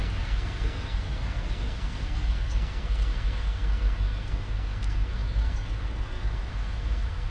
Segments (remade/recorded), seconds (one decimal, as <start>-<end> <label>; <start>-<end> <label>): 0.0-7.3 remade